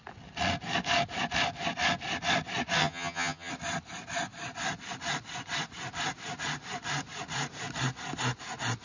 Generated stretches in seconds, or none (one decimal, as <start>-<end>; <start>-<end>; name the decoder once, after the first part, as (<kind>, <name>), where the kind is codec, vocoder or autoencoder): 2.8-3.5 (vocoder, HiFi-GAN)